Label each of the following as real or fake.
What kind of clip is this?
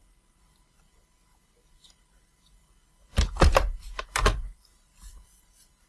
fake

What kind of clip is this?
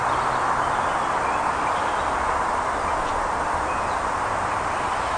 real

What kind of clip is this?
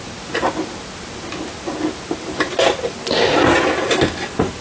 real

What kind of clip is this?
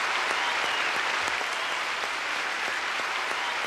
real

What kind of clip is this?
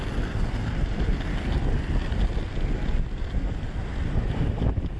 real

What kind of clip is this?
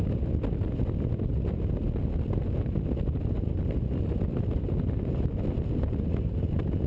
real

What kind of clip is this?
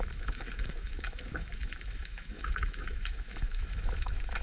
fake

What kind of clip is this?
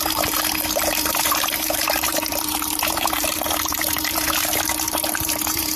fake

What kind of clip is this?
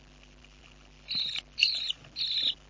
real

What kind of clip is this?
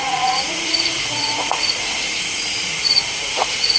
fake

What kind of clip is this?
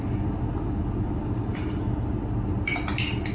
real